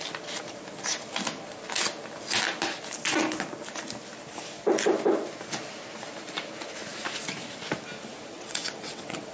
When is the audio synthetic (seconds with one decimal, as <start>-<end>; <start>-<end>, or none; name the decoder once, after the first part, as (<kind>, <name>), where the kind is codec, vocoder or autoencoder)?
8.3-9.3 (vocoder, WaveNeXt)